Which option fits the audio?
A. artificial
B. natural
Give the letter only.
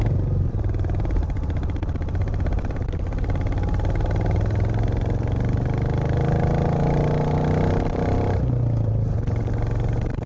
B